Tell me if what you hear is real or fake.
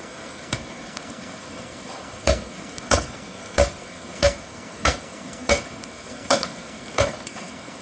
fake